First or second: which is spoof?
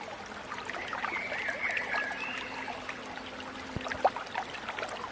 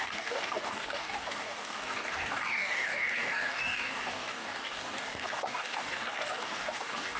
second